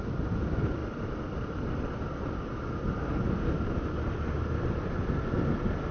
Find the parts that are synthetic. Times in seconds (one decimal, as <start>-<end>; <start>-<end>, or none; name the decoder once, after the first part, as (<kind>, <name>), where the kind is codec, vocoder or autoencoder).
none